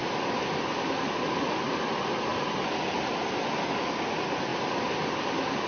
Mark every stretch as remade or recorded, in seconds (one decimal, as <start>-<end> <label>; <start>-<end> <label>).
0.0-5.7 recorded